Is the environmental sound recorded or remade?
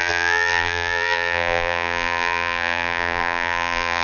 remade